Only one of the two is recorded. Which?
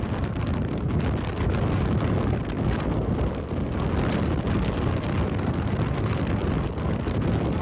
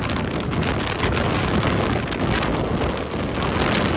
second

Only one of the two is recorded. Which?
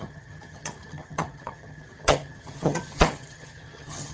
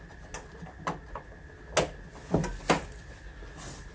second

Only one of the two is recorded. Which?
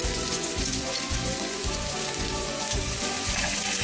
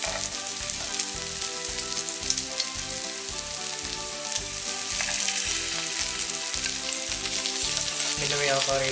second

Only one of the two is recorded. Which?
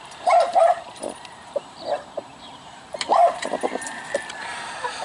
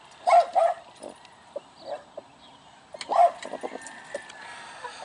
second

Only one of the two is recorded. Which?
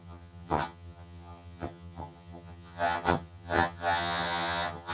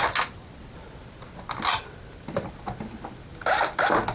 second